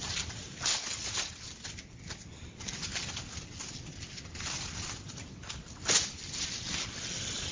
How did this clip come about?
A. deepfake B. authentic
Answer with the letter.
B